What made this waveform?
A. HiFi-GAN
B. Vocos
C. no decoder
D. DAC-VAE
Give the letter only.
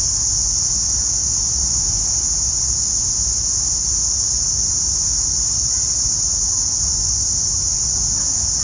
C